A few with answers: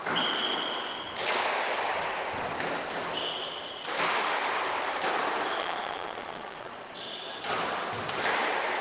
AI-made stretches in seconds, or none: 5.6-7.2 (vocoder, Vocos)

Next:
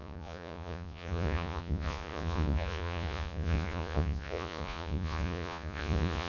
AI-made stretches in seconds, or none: 0.0-6.3 (vocoder, Vocos)

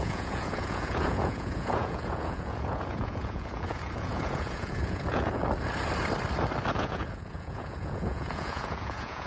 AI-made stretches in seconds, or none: 0.0-5.4 (vocoder, Vocos); 6.7-9.3

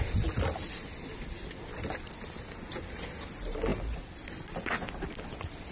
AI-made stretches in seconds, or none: none

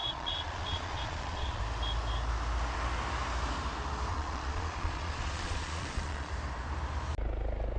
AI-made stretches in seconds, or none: 0.0-1.6 (vocoder, Vocos); 4.1-6.3